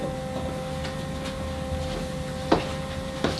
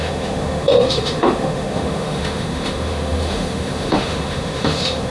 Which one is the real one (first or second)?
first